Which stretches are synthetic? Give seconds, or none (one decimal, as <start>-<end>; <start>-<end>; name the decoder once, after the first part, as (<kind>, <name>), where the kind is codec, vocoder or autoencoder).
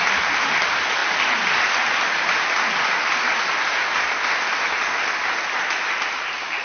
none